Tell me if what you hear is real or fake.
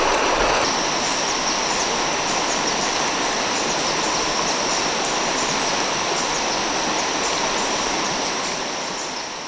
real